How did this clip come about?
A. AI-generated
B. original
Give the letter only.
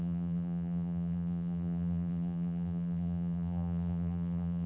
A